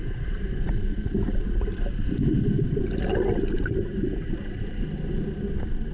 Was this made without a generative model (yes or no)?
yes